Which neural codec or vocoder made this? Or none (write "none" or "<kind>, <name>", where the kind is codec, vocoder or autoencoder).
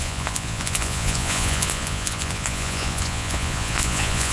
vocoder, Vocos